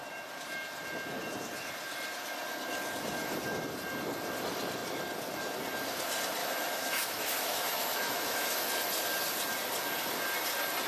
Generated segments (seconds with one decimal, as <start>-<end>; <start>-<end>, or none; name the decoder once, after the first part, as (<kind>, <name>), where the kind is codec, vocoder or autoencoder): 6.4-8.6 (autoencoder, DAC-VAE)